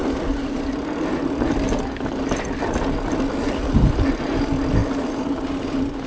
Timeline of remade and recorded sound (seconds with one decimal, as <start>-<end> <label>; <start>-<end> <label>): 0.0-6.1 recorded